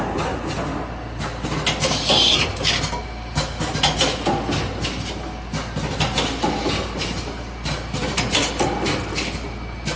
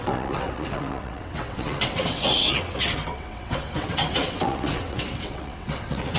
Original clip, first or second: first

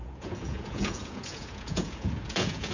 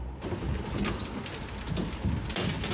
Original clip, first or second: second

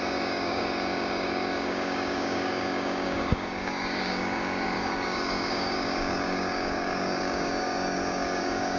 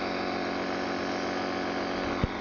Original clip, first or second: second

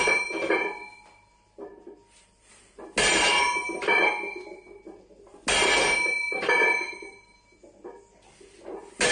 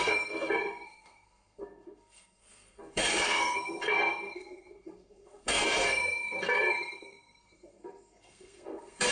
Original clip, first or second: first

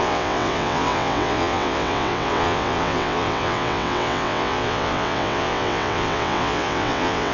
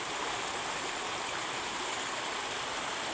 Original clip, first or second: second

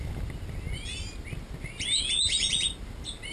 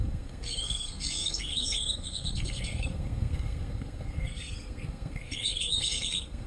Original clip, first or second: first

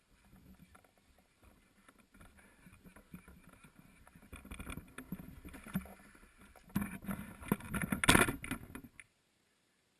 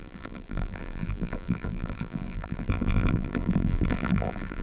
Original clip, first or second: first